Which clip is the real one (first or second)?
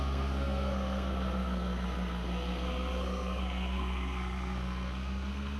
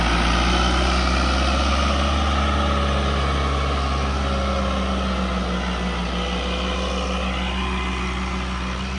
second